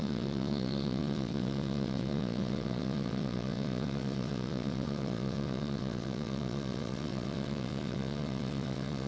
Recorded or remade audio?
remade